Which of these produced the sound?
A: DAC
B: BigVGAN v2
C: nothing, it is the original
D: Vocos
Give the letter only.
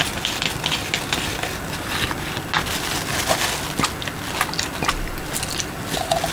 C